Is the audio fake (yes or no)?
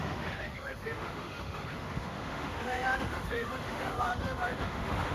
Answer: yes